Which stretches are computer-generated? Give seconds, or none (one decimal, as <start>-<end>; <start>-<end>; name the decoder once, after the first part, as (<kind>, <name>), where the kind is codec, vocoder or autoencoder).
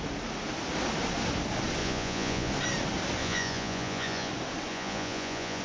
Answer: 1.8-2.5 (vocoder, Vocos); 3.2-4.3; 4.7-5.6